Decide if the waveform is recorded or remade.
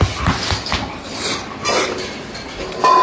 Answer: recorded